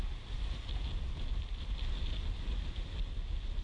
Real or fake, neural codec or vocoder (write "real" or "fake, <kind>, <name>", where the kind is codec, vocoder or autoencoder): real